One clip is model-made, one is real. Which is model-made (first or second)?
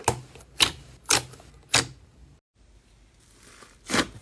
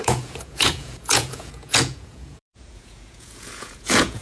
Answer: second